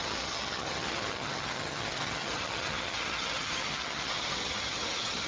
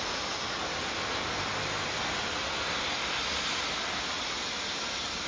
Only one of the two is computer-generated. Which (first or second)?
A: first